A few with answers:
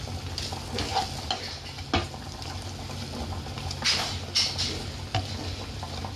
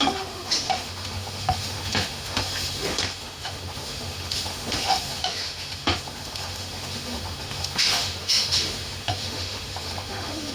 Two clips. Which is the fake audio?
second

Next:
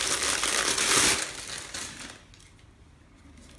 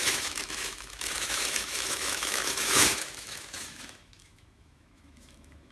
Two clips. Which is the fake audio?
second